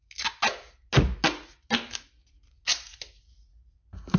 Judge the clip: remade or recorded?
recorded